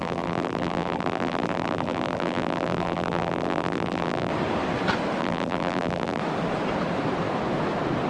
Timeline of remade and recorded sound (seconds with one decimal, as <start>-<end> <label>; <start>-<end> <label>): 0.0-4.3 remade; 4.3-5.2 recorded; 5.2-6.2 remade; 6.2-8.1 recorded